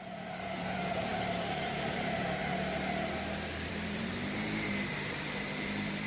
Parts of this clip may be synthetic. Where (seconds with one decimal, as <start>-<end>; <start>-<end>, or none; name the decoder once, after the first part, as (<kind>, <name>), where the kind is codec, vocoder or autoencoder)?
0.0-2.4 (vocoder, BigVGAN v2); 3.7-6.1